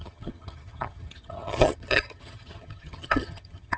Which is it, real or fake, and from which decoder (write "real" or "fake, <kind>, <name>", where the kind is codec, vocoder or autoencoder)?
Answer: fake, vocoder, HiFi-GAN